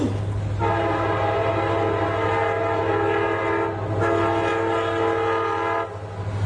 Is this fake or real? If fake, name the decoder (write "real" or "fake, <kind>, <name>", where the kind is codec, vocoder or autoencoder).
real